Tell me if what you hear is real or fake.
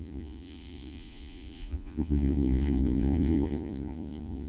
fake